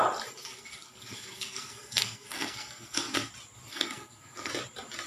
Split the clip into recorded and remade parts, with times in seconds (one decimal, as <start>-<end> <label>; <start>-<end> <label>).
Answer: 0.0-0.4 recorded; 0.4-3.3 remade; 3.3-3.7 recorded; 3.7-4.5 remade; 4.5-5.1 recorded